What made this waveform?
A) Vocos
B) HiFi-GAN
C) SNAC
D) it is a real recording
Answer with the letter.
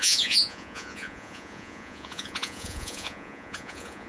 A